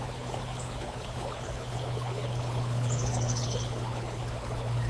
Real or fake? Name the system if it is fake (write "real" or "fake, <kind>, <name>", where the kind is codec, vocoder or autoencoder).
fake, codec, HILCodec